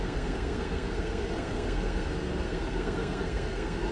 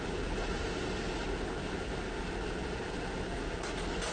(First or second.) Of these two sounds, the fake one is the first